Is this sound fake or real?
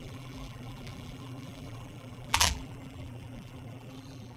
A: fake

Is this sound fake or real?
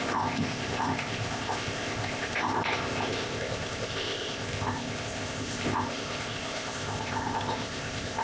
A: fake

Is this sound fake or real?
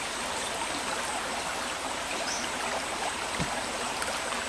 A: real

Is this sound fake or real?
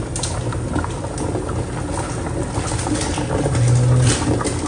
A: real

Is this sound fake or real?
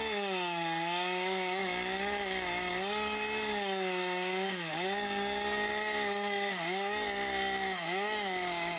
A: fake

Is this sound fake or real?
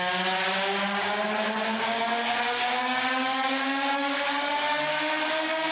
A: fake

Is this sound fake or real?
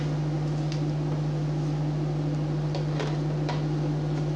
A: real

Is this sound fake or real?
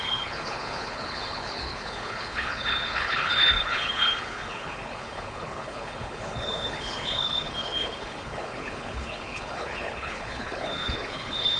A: fake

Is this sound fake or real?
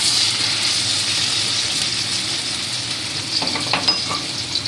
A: real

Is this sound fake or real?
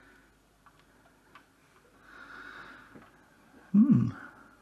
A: real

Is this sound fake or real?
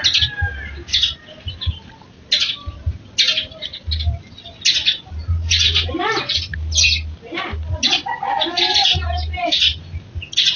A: real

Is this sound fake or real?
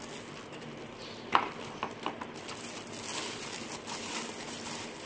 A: real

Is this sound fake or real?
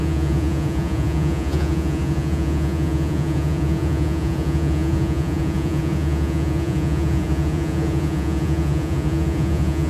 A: fake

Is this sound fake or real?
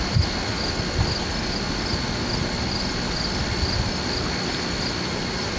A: real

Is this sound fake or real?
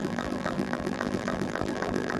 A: fake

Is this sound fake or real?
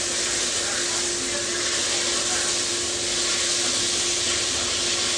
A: real